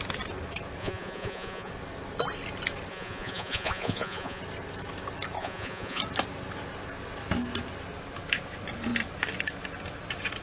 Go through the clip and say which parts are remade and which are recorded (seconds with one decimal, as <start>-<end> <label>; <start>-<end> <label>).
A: 0.0-0.8 recorded; 0.8-1.7 remade; 1.7-2.9 recorded; 2.9-4.4 remade; 4.4-5.4 recorded; 5.4-6.0 remade; 6.0-10.4 recorded